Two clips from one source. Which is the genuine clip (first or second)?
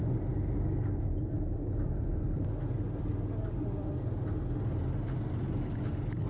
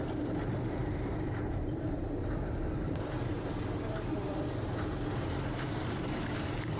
first